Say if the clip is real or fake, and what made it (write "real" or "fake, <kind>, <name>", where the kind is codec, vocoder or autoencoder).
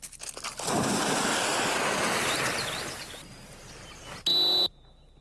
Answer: real